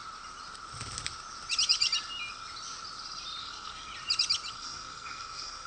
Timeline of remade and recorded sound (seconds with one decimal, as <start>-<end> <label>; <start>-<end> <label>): 0.0-3.4 recorded; 3.4-3.9 remade; 3.9-4.5 recorded; 4.5-5.7 remade